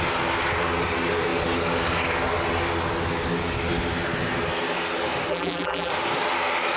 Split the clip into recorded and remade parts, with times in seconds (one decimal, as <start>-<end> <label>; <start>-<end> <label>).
0.0-5.3 recorded; 5.3-5.9 remade; 5.9-6.8 recorded